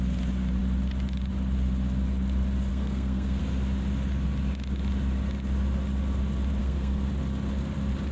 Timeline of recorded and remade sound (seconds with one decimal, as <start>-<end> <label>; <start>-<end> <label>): 0.0-2.7 recorded; 2.7-3.4 remade; 3.4-6.6 recorded; 6.6-7.1 remade; 7.1-8.1 recorded